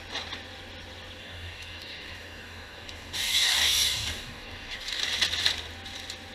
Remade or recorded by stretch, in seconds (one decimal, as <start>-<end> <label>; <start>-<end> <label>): 0.0-1.2 recorded; 1.2-5.0 remade; 5.0-6.3 recorded